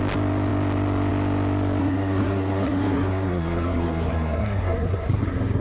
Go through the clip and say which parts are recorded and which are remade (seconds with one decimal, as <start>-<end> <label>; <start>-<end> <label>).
0.0-1.8 recorded; 1.8-5.6 remade